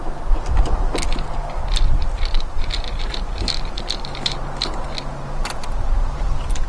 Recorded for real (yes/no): yes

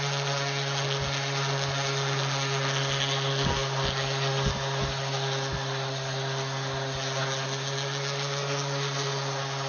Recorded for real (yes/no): yes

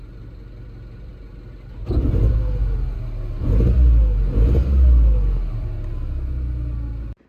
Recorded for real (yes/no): yes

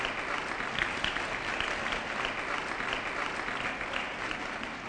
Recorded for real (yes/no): yes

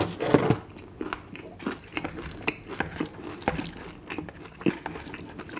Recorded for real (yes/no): yes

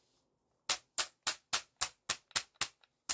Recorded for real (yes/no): yes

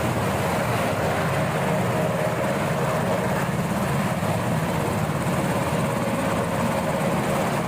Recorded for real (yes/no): yes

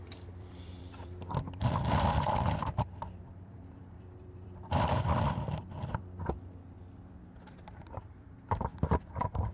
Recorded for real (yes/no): no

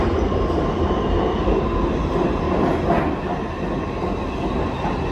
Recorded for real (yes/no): yes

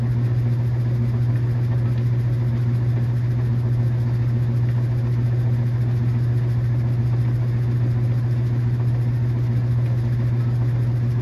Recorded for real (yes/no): yes